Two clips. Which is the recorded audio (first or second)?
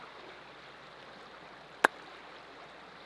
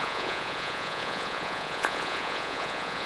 first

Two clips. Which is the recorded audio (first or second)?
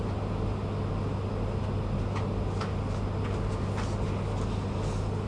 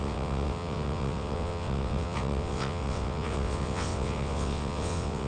first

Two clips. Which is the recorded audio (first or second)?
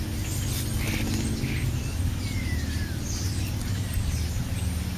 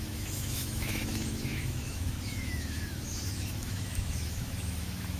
first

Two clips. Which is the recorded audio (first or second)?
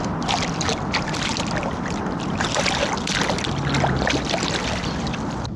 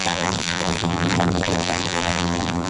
first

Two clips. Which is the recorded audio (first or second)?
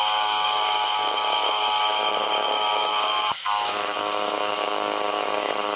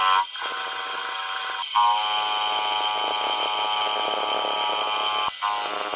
second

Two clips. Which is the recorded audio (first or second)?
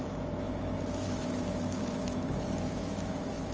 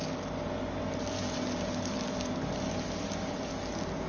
second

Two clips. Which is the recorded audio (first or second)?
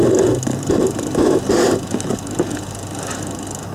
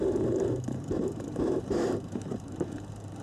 first